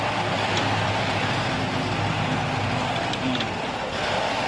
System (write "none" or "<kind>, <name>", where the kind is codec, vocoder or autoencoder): none